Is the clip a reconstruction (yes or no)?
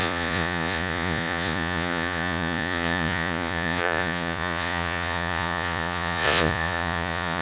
yes